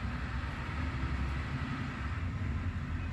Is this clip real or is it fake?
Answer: real